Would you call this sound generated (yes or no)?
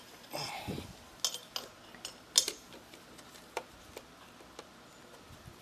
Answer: no